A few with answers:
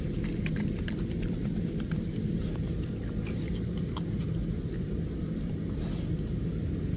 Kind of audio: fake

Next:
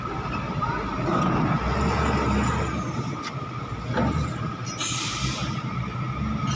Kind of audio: real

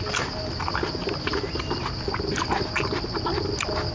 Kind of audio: real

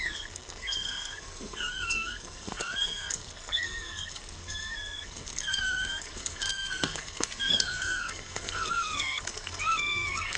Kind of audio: fake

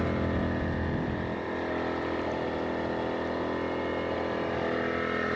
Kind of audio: real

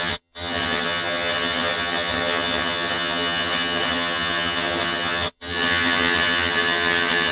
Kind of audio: fake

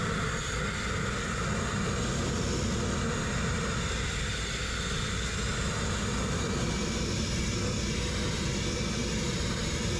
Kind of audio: real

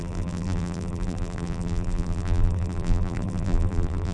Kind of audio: fake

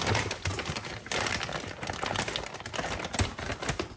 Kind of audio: real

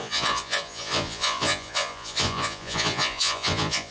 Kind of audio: fake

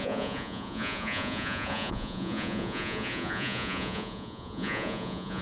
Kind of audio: fake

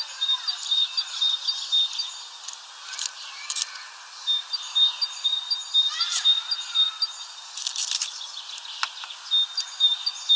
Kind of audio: real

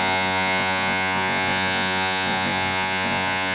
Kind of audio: fake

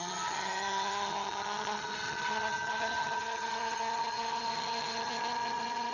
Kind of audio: fake